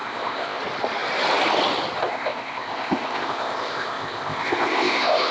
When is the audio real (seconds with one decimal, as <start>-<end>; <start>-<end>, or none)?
0.6-2.0